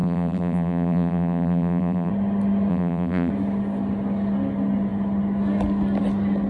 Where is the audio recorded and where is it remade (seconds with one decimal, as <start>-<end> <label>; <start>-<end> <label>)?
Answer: 0.0-2.1 remade; 2.1-2.7 recorded; 2.7-3.3 remade; 3.3-6.5 recorded